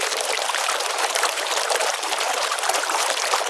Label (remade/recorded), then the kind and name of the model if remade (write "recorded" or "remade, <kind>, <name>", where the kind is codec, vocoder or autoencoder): remade, vocoder, BigVGAN v2